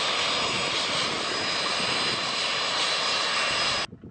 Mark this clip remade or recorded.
recorded